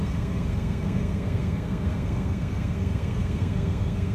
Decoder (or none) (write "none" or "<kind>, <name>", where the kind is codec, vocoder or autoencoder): codec, SNAC